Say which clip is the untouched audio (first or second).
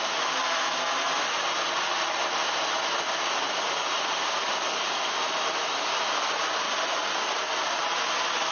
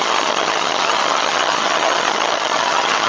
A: first